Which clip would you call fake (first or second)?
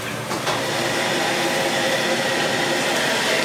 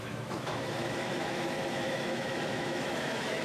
second